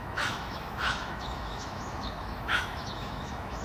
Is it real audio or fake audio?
fake